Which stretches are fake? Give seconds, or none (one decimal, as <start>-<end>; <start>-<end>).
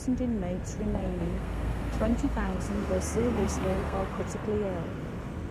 0.9-4.2